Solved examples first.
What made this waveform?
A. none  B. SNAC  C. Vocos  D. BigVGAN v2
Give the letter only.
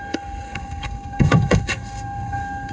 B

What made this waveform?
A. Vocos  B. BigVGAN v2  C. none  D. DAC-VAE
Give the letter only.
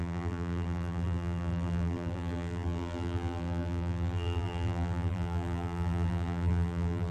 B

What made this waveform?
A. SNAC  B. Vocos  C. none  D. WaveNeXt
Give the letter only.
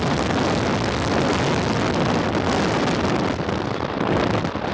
C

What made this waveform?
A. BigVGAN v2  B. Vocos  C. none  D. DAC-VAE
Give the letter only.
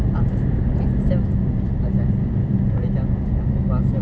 C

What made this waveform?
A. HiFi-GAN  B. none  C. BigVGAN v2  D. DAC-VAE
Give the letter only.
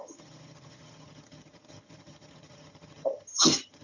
A